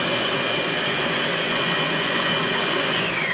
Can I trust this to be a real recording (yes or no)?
no